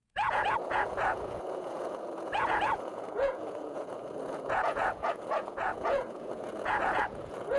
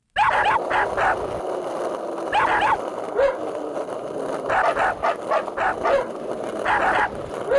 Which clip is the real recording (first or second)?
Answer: second